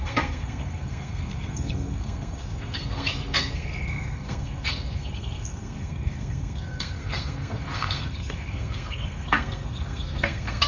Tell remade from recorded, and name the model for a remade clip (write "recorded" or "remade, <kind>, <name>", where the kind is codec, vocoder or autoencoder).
remade, codec, SNAC